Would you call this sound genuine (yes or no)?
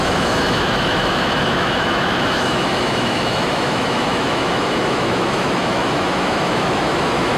no